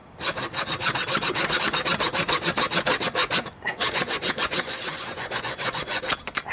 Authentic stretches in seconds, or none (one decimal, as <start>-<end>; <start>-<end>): 0.0-3.2; 6.0-6.5